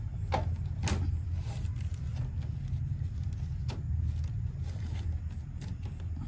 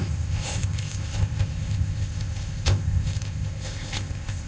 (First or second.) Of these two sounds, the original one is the first